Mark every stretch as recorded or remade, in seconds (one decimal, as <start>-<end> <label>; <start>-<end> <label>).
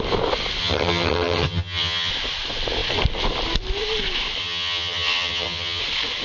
0.0-0.6 recorded; 0.6-2.1 remade; 2.1-4.4 recorded; 4.4-5.8 remade; 5.8-6.2 recorded